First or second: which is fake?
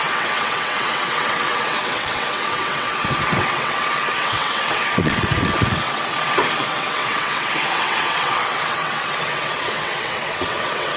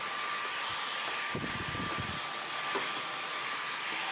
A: first